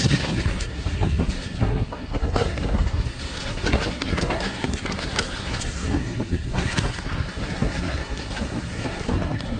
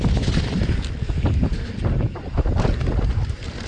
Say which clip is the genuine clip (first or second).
second